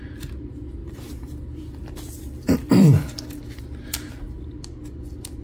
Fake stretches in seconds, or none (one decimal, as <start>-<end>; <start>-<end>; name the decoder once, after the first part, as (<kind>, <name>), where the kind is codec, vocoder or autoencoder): 0.8-3.6 (vocoder, BigVGAN v2)